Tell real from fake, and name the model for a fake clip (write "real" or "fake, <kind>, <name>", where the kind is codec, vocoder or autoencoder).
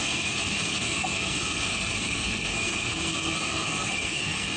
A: fake, codec, SNAC